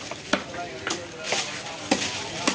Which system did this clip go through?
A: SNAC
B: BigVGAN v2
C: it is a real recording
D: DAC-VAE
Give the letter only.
C